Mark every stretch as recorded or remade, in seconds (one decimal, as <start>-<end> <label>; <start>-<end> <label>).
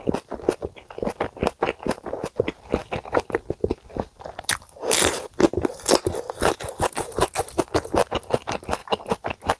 0.0-9.6 recorded